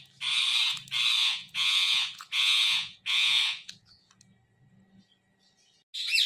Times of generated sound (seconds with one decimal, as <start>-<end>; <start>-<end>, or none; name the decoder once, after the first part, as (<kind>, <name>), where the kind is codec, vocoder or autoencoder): 1.2-4.1 (vocoder, Vocos)